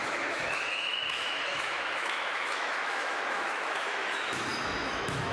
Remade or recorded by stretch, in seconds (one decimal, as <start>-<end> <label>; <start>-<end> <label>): 0.0-5.3 remade